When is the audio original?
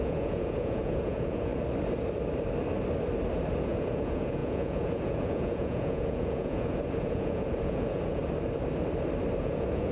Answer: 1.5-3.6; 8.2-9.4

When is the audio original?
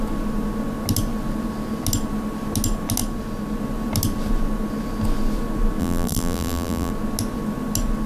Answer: 0.0-5.8; 6.9-8.1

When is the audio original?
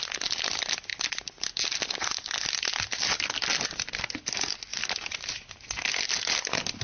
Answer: 0.0-6.8